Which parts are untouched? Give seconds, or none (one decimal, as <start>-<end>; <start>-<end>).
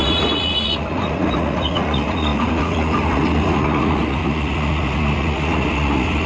none